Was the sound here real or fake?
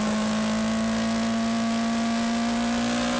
real